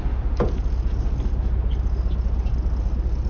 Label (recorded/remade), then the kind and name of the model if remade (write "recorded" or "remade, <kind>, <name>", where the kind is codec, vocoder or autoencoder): recorded